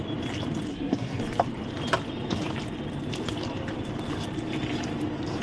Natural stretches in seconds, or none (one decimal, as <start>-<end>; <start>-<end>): 0.0-0.7; 1.2-5.4